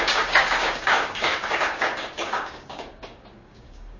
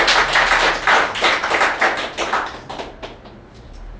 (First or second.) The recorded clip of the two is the second